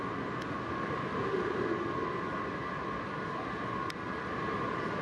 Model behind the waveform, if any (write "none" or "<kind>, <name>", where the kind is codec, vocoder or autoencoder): none